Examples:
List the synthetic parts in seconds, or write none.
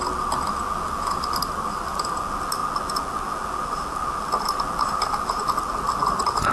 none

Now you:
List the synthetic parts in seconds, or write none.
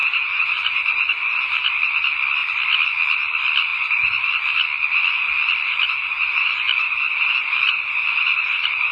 0.0-1.8; 3.7-4.3; 5.7-8.9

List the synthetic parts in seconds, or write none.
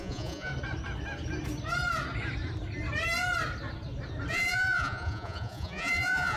0.0-0.5; 4.3-6.4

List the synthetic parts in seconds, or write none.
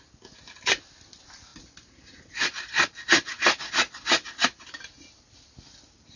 none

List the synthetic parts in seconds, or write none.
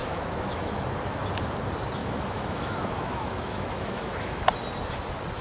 0.0-0.7; 2.0-4.4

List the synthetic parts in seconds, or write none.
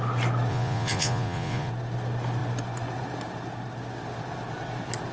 0.5-1.7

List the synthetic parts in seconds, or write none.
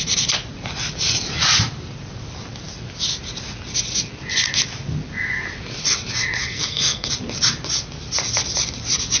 6.4-7.1